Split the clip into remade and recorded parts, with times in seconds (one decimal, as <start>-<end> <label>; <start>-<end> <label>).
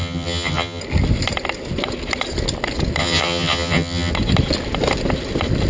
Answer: 0.0-0.8 remade; 0.8-3.0 recorded; 3.0-4.1 remade; 4.1-5.7 recorded